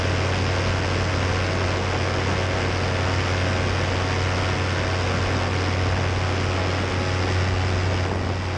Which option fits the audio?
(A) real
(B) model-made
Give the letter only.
A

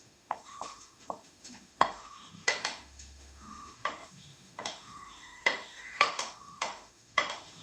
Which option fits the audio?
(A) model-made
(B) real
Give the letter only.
A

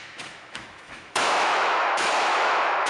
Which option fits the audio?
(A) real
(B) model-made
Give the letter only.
B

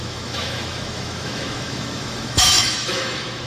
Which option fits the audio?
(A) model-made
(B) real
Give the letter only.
A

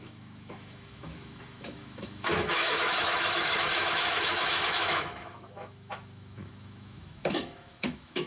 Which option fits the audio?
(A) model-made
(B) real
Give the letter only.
A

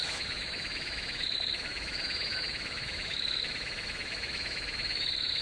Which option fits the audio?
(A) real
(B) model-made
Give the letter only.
B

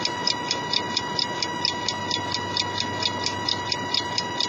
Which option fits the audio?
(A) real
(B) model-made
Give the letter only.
A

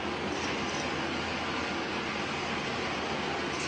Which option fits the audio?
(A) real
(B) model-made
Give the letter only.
A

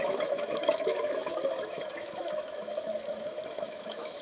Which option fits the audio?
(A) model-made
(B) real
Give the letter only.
A